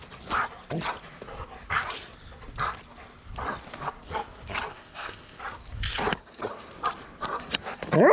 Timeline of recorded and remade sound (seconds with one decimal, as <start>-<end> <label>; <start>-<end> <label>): 0.0-4.7 recorded; 4.7-5.4 remade; 5.4-8.1 recorded